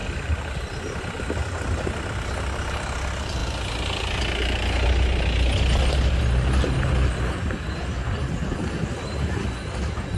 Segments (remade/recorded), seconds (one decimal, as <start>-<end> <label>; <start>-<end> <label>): 0.0-10.2 recorded